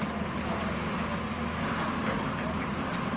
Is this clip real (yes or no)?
yes